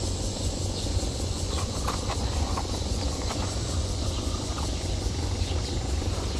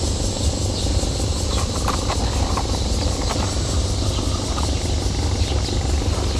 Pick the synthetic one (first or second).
first